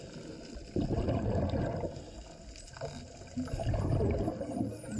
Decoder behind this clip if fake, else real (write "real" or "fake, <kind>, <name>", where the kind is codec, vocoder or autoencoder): real